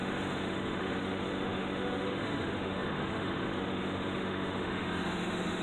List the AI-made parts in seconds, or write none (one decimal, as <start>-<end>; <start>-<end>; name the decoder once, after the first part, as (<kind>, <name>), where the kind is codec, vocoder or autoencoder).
0.0-5.6 (autoencoder, DAC-VAE)